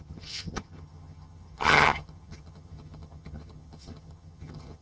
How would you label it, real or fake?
fake